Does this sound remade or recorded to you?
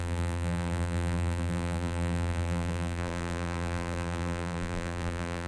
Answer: remade